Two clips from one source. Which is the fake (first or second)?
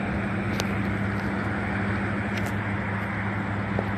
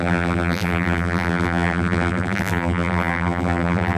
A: second